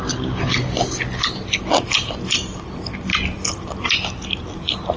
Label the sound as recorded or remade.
recorded